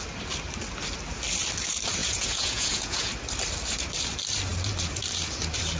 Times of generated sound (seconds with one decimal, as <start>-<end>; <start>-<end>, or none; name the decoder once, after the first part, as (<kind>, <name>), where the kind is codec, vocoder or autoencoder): 2.0-3.1 (vocoder, Vocos)